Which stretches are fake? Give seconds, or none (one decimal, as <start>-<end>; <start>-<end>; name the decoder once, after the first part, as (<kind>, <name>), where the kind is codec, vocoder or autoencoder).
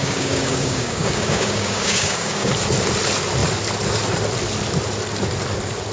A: 0.0-2.5 (codec, DAC)